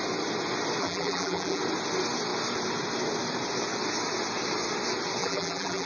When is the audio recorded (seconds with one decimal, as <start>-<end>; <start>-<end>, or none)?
0.0-0.8; 1.6-5.2